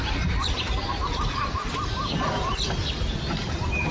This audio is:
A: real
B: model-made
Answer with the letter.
A